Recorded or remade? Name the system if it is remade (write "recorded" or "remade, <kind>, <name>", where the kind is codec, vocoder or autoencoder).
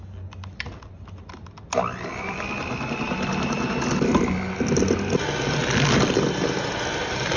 recorded